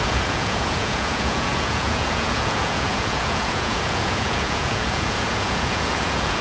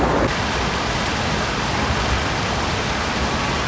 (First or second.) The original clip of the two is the second